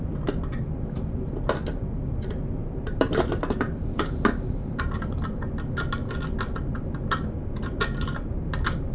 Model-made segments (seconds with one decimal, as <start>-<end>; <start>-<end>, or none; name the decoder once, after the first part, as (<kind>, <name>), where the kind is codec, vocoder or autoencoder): 2.6-4.8 (vocoder, BigVGAN v2)